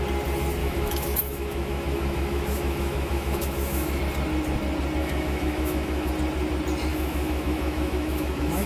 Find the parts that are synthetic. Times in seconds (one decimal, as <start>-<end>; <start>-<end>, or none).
0.6-4.0; 5.0-6.1; 6.9-8.7